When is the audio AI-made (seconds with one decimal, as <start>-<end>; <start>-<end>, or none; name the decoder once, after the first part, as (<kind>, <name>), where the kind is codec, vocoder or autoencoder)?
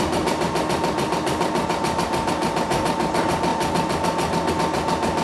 none